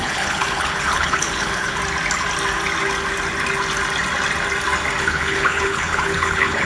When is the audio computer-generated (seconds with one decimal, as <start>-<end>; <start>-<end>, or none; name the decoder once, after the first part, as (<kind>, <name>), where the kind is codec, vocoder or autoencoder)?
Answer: 0.0-1.8 (codec, HILCodec); 5.0-6.6